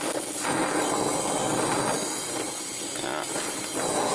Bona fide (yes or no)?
yes